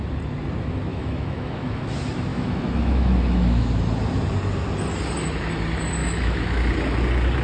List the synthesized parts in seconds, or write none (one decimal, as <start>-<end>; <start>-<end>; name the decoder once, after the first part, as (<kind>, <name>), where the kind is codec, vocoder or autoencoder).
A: 0.9-1.8 (autoencoder, DAC-VAE); 2.3-3.7; 6.0-6.7